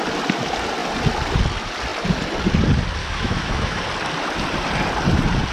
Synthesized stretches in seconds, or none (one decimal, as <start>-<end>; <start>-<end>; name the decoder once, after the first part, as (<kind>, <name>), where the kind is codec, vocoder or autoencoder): 3.0-3.8 (autoencoder, DAC-VAE)